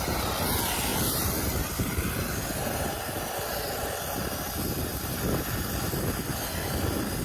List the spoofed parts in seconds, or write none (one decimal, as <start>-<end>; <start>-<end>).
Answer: none